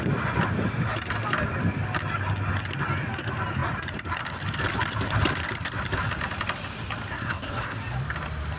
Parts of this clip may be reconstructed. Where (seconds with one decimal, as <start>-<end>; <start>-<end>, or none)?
7.1-7.8